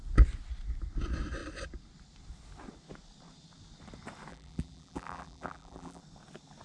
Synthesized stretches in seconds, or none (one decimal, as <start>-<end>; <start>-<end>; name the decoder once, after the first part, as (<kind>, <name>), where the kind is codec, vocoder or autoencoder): 4.3-6.0 (vocoder, BigVGAN v2)